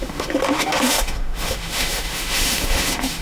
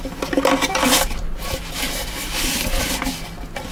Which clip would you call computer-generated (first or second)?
first